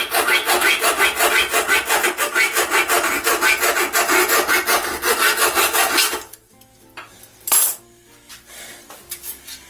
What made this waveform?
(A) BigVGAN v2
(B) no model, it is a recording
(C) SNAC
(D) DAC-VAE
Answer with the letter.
B